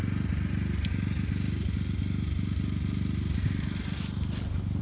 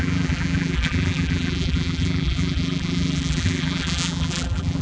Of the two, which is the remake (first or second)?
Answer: second